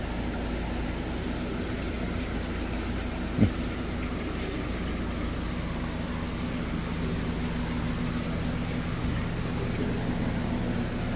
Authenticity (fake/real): real